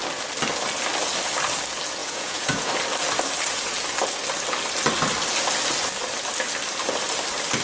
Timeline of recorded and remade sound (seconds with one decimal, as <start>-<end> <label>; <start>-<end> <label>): 0.0-2.0 recorded; 2.0-2.7 remade; 2.7-7.6 recorded